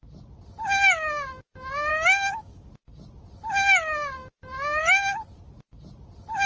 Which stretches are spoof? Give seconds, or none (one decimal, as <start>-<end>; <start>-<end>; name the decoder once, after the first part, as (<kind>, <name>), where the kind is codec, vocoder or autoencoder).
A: 1.9-2.7 (codec, DAC)